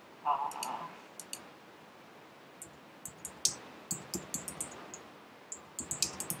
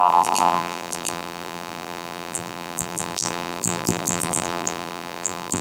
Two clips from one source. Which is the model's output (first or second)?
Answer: second